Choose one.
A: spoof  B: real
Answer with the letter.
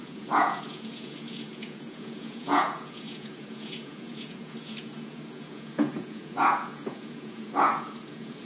A